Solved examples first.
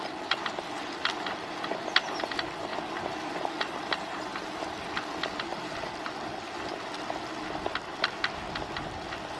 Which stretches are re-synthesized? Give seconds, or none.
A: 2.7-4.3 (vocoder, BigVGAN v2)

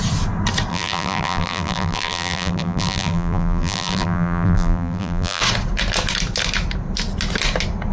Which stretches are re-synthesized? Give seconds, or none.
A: 0.7-5.4 (vocoder, BigVGAN v2)